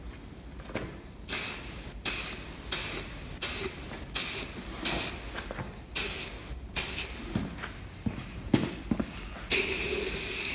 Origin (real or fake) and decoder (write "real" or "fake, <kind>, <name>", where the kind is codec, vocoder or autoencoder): real